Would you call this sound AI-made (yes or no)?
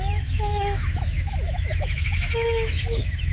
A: yes